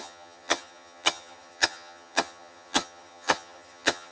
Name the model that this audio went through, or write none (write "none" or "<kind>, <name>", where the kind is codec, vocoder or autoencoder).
vocoder, HiFi-GAN